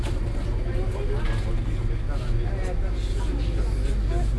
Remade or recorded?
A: recorded